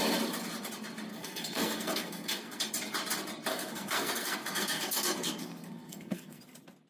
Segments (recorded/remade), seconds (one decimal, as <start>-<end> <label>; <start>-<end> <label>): 0.0-1.1 recorded; 1.1-2.6 remade; 2.6-3.5 recorded; 3.5-6.4 remade; 6.4-6.9 recorded